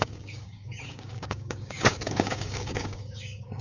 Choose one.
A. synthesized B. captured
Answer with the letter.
A